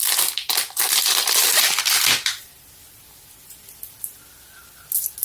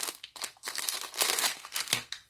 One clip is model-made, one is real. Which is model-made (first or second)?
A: second